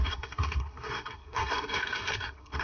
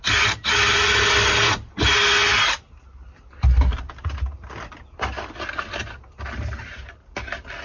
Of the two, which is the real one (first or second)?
second